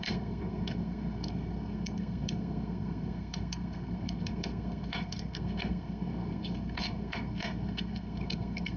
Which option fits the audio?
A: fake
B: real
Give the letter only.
A